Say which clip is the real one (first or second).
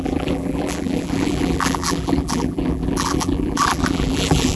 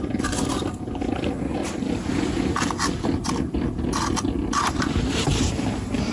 second